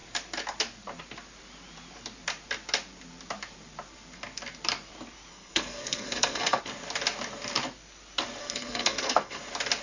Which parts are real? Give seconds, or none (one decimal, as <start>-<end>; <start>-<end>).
0.0-5.3; 6.6-8.4; 9.4-9.8